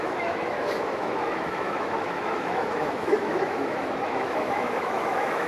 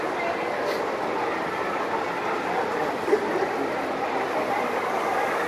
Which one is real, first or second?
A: second